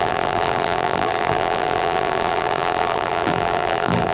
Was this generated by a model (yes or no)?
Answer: yes